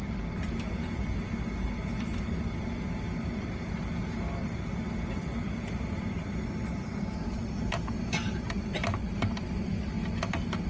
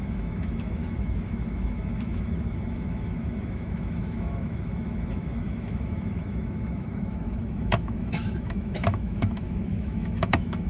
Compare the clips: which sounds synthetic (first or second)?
second